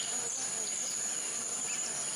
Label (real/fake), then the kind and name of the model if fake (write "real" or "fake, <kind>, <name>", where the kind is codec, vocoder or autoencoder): real